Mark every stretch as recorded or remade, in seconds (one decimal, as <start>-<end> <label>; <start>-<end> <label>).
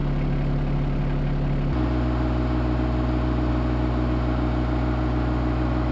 0.0-5.9 recorded